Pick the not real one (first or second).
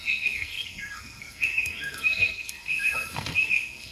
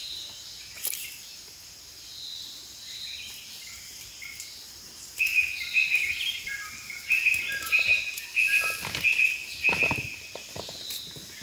first